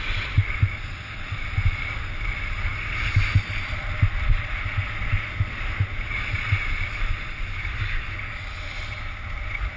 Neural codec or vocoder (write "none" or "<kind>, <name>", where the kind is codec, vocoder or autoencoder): none